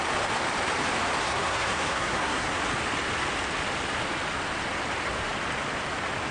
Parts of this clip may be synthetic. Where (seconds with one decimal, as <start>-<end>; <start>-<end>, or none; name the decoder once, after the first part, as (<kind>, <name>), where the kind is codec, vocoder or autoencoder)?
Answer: 1.2-2.6 (codec, SNAC)